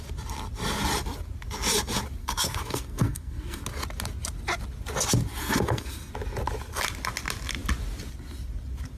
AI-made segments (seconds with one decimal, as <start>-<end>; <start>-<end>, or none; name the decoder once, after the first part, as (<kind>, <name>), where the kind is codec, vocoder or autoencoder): 2.2-3.6 (codec, SNAC); 5.4-6.1